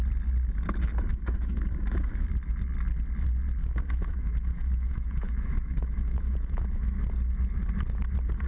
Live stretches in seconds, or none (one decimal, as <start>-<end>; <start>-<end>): 0.0-1.1; 2.3-3.6; 7.0-8.5